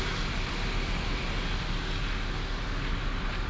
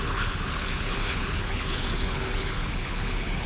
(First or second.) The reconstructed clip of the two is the second